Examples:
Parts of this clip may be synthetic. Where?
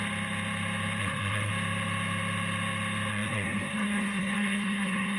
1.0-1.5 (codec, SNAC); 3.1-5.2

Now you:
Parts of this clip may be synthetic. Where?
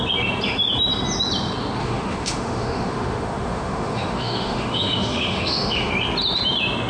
1.8-5.9 (autoencoder, DAC-VAE)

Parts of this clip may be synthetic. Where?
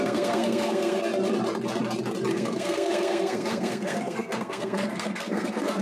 0.0-1.1 (codec, SNAC); 2.3-5.8